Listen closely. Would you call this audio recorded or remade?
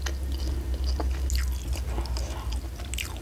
recorded